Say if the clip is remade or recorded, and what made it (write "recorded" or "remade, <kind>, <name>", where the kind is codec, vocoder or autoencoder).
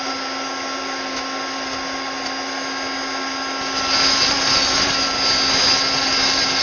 recorded